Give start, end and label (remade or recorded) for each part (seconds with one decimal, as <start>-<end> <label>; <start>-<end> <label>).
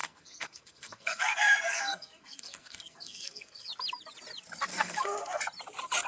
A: 0.0-3.7 remade; 3.7-4.7 recorded; 4.7-5.4 remade; 5.4-6.1 recorded